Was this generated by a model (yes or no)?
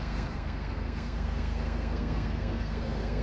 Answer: yes